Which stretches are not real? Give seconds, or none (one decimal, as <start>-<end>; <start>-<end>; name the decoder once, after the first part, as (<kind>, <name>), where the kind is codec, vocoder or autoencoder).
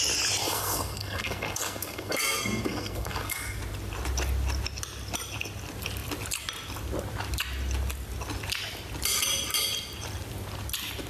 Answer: 0.4-3.6 (codec, SNAC)